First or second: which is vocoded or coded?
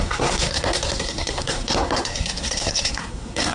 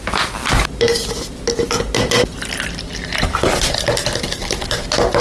first